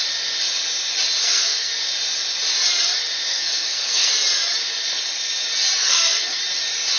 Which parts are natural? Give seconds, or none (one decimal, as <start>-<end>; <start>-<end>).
0.0-1.2; 1.7-3.3; 4.1-5.8; 6.4-7.0